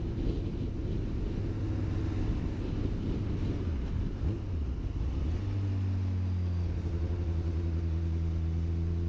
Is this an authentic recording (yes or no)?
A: yes